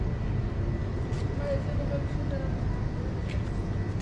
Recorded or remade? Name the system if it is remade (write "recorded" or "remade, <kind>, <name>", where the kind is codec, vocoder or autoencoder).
recorded